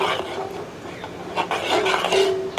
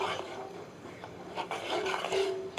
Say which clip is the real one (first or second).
first